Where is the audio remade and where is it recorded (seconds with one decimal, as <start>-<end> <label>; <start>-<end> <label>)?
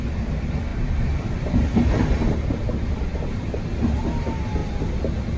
0.0-5.4 recorded